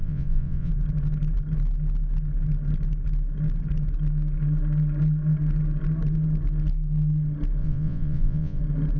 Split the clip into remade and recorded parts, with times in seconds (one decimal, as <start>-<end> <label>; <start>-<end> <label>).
0.0-0.7 remade; 0.7-7.6 recorded; 7.6-8.6 remade; 8.6-9.0 recorded